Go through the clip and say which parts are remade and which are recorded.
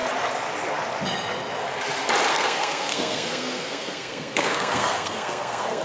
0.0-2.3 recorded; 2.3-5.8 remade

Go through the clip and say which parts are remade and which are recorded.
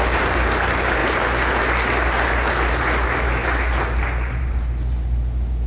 0.0-5.7 recorded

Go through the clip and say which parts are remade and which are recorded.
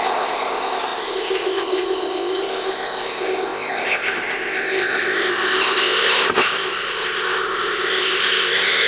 0.0-8.9 remade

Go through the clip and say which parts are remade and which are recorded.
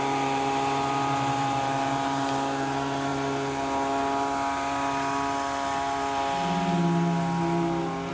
0.0-8.1 recorded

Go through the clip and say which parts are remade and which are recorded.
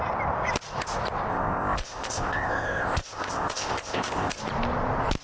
0.0-1.3 recorded; 1.3-4.4 remade; 4.4-5.2 recorded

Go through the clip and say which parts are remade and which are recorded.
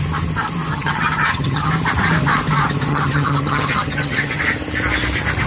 0.0-0.7 recorded; 0.7-1.7 remade; 1.7-2.9 recorded; 2.9-4.4 remade; 4.4-5.5 recorded